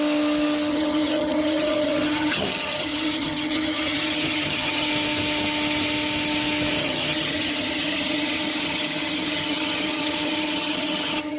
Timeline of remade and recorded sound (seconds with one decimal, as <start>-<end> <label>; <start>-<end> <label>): 0.0-0.7 recorded; 0.7-4.9 remade; 4.9-6.8 recorded; 6.8-11.4 remade

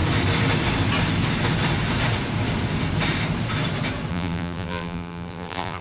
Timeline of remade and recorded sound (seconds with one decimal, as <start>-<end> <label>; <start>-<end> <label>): 0.0-4.1 recorded; 4.1-5.8 remade

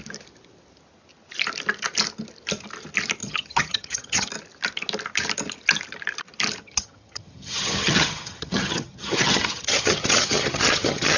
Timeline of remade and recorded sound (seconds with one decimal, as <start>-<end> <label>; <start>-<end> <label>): 0.0-3.2 recorded; 3.2-4.3 remade; 4.3-6.6 recorded; 6.6-11.2 remade